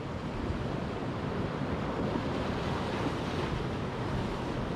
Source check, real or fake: real